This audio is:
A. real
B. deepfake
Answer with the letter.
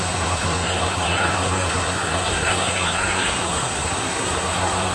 B